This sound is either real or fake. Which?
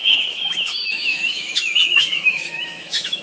fake